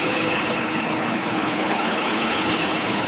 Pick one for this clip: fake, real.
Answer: fake